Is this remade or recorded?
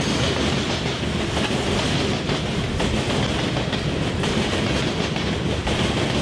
recorded